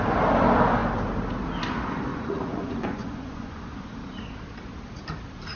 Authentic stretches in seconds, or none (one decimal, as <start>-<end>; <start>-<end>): 0.0-2.1; 3.9-5.6